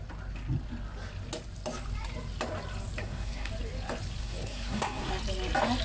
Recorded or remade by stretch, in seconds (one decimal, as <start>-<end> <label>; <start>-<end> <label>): 0.0-3.0 recorded; 3.0-3.5 remade; 3.5-4.2 recorded; 4.2-5.1 remade; 5.1-5.8 recorded